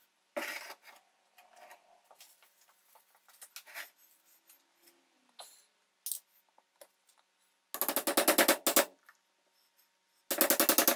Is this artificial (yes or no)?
no